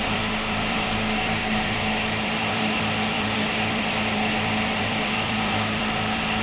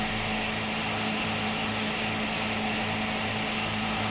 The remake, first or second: first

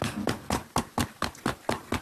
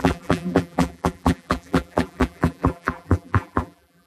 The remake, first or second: second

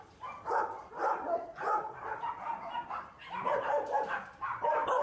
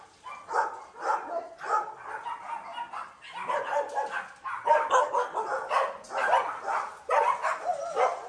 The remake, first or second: first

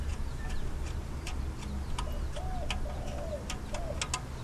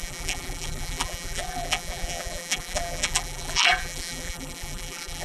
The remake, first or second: second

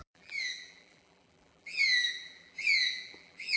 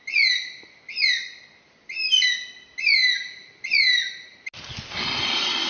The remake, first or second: first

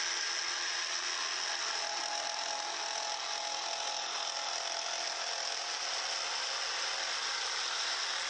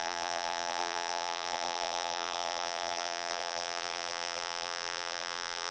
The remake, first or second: second